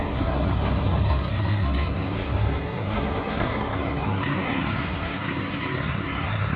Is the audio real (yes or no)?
no